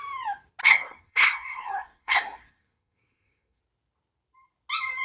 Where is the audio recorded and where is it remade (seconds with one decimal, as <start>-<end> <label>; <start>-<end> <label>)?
0.0-0.6 recorded; 0.6-3.6 remade; 3.6-5.0 recorded